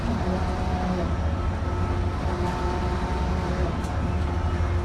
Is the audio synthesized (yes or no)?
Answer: no